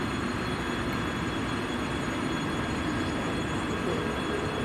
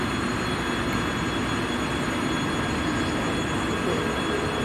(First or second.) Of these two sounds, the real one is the second